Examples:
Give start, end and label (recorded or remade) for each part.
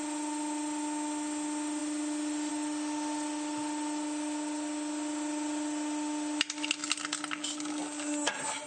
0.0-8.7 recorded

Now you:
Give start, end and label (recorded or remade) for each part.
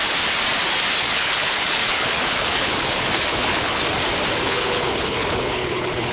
0.0-1.0 recorded; 1.0-3.8 remade; 3.8-4.4 recorded; 4.4-6.1 remade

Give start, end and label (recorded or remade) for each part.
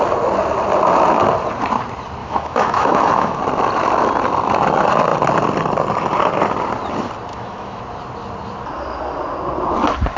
0.0-2.2 recorded; 2.2-3.4 remade; 3.4-7.3 recorded; 7.3-7.8 remade; 7.8-10.2 recorded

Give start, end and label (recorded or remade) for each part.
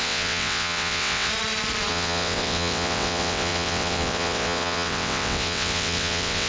0.0-1.3 remade; 1.3-1.9 recorded; 1.9-6.5 remade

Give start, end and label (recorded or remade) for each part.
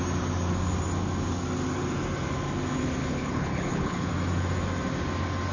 0.0-3.0 recorded; 3.0-4.1 remade; 4.1-5.5 recorded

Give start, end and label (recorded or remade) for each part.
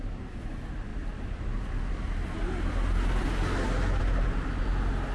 0.0-5.1 recorded